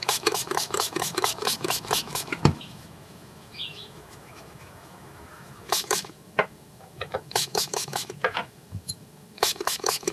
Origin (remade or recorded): remade